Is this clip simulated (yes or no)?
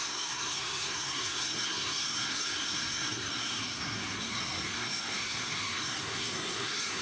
yes